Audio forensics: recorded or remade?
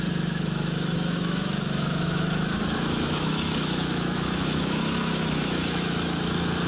remade